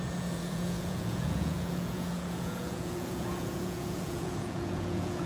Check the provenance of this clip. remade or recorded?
remade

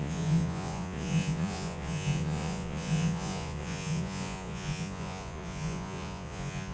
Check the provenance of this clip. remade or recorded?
remade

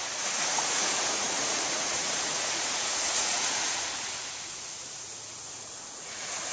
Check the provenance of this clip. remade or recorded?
remade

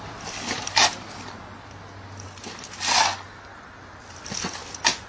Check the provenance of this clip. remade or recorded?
recorded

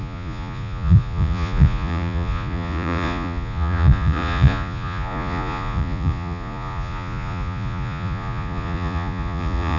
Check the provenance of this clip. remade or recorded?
remade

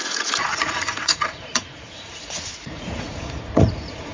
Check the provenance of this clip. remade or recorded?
remade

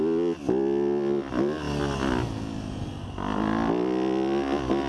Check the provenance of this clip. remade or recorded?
recorded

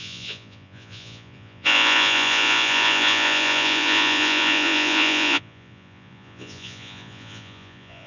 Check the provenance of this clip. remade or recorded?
remade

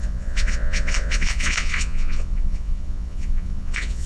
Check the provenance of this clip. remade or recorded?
remade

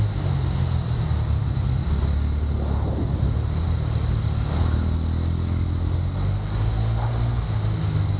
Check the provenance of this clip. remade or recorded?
recorded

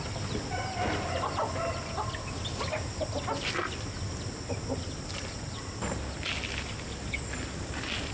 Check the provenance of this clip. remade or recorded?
recorded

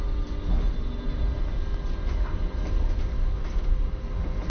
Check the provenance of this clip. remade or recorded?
recorded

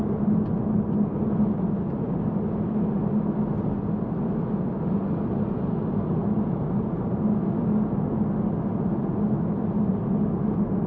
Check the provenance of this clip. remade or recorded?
recorded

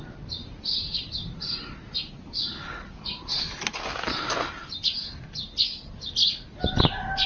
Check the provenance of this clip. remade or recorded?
recorded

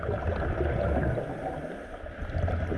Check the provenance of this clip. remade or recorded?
recorded